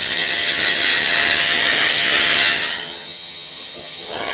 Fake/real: fake